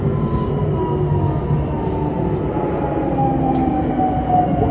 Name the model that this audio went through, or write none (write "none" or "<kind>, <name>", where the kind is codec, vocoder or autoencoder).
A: none